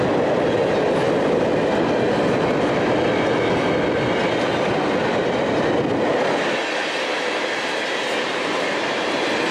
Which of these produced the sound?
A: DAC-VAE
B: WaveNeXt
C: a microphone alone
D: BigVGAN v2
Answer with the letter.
C